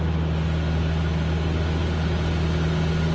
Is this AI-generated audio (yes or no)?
no